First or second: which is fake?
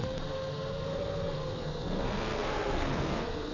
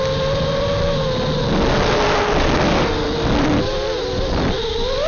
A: first